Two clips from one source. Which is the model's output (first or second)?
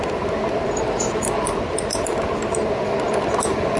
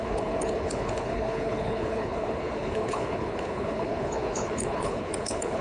second